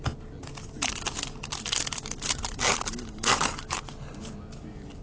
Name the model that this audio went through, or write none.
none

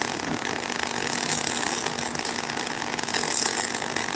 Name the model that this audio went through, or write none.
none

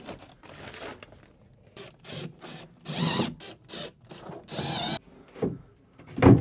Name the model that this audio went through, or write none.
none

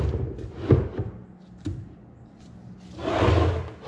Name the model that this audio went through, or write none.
none